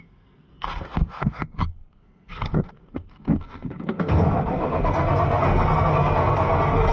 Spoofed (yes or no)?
yes